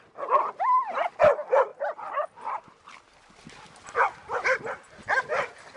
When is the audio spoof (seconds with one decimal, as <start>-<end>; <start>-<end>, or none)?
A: none